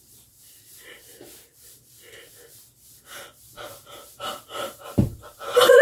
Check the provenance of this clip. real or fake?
fake